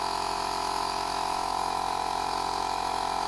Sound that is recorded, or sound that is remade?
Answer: remade